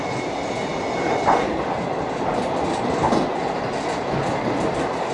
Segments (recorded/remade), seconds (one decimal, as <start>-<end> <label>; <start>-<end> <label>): 0.0-5.1 recorded